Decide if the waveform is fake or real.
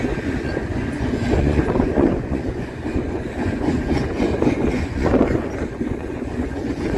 fake